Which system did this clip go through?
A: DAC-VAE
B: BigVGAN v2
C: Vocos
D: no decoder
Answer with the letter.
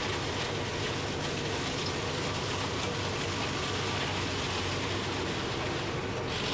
D